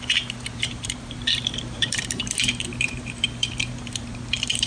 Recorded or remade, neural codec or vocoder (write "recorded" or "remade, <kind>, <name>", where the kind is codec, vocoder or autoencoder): remade, vocoder, BigVGAN v2